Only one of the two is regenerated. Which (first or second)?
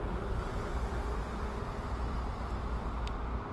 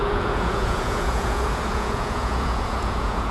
second